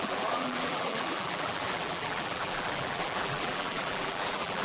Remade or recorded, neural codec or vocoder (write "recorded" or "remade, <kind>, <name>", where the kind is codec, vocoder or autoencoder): remade, vocoder, BigVGAN v2